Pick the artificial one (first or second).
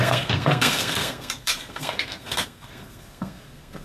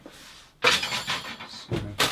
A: first